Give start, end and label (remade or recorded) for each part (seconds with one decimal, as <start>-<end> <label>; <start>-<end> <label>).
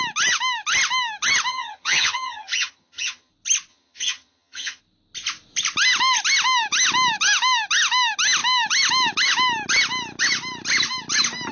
0.0-1.5 recorded; 1.5-3.3 remade; 3.3-3.7 recorded; 3.7-4.8 remade; 4.8-11.5 recorded